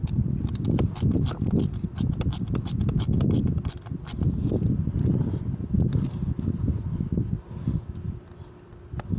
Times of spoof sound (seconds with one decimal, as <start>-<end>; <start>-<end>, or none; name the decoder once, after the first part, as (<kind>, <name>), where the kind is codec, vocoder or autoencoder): none